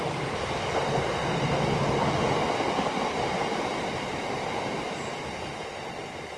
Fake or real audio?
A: real